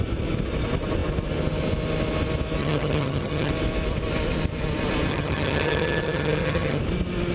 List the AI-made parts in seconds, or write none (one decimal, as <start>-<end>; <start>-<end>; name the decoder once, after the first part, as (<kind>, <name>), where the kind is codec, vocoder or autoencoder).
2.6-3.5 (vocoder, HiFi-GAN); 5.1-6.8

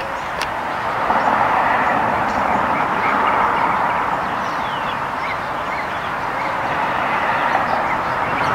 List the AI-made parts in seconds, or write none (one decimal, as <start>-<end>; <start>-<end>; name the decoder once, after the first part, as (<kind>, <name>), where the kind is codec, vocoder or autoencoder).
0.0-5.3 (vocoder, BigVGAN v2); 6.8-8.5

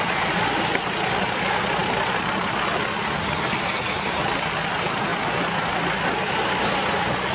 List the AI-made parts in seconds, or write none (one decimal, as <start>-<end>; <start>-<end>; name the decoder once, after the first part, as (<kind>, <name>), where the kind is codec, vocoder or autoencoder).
none

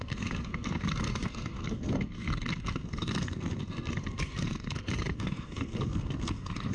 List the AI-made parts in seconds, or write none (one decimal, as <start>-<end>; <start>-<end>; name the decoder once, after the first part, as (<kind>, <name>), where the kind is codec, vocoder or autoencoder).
0.0-6.7 (codec, SNAC)

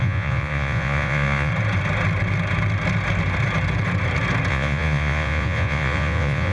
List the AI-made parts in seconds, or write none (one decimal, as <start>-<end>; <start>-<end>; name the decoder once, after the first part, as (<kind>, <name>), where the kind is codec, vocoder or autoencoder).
0.0-1.5 (vocoder, Vocos); 4.5-6.5